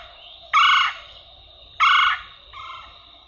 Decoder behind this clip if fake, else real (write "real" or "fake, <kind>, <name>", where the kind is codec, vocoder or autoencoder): real